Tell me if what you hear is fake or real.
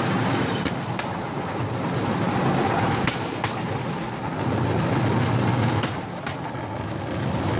real